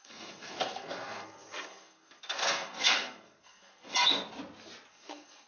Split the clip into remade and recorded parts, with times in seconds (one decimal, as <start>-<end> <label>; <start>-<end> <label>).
0.0-3.8 remade; 3.8-4.9 recorded; 4.9-5.5 remade